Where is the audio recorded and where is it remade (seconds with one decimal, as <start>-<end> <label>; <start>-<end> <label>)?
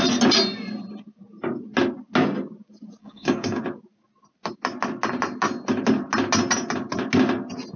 0.0-3.0 recorded; 3.0-3.6 remade; 3.6-7.8 recorded